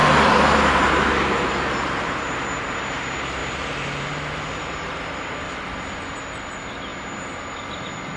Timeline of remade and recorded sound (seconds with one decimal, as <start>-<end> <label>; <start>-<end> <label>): 0.0-6.9 recorded; 6.9-7.4 remade; 7.4-8.2 recorded